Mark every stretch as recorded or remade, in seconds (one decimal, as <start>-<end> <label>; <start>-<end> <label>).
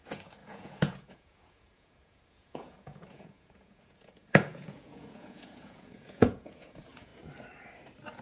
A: 0.0-7.1 remade; 7.1-8.2 recorded